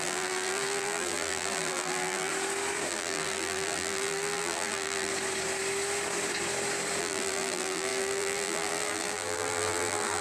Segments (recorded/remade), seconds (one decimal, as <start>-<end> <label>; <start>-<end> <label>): 0.0-2.3 remade; 2.3-2.9 recorded; 2.9-5.1 remade; 5.1-7.0 recorded; 7.0-10.2 remade